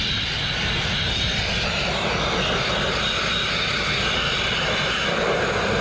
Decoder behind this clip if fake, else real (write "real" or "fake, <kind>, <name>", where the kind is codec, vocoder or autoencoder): real